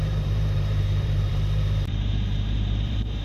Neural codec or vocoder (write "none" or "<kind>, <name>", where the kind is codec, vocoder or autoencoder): vocoder, BigVGAN v2